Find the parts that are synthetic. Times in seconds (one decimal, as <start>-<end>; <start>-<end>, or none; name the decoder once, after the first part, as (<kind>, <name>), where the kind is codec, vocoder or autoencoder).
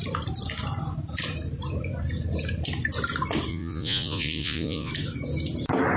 3.5-4.9 (vocoder, Vocos)